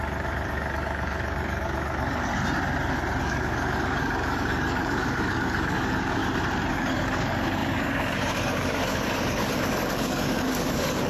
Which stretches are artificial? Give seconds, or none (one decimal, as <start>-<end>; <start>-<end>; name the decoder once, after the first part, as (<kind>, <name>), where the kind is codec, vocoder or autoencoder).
0.0-2.3 (codec, DAC); 3.2-6.2; 6.7-11.1